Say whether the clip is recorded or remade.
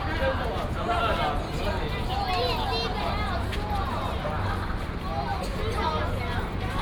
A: recorded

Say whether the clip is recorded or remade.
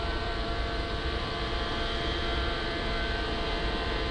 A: remade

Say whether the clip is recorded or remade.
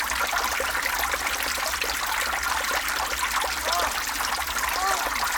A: recorded